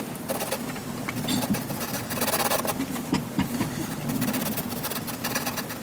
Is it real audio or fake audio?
real